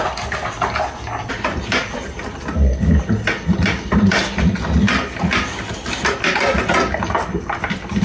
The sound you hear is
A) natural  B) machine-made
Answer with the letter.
A